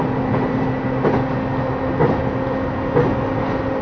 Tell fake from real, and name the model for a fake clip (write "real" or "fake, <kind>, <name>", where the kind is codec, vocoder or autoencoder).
real